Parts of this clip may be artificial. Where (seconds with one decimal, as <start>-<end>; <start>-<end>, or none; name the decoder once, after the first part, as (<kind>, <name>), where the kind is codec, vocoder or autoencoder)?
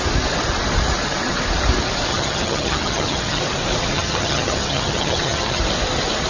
2.1-3.4 (vocoder, HiFi-GAN); 3.9-5.6